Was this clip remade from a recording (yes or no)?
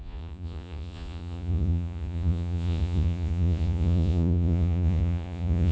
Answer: yes